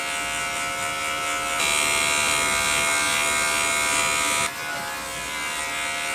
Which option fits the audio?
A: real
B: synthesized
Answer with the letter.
A